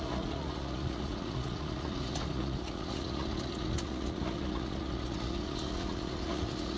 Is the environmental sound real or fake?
fake